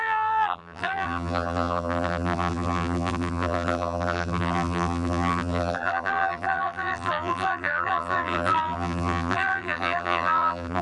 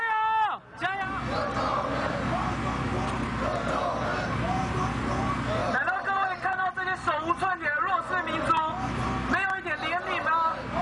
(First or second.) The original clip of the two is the second